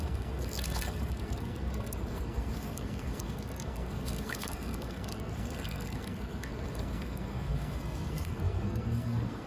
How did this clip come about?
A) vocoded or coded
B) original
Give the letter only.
A